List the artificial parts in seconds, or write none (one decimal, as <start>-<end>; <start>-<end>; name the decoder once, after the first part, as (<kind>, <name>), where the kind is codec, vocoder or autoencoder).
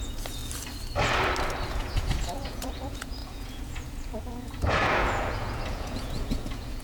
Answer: 0.0-0.4 (vocoder, Vocos); 1.7-6.8